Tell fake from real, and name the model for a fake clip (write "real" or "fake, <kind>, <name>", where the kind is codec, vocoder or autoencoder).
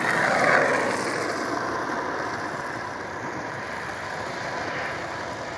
real